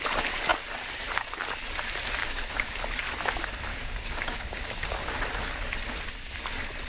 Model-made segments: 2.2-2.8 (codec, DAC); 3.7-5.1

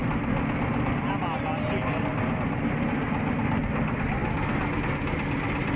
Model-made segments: none

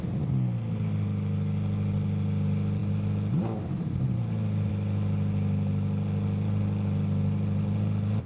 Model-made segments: none

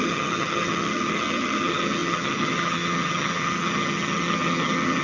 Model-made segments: 0.0-5.0 (vocoder, HiFi-GAN)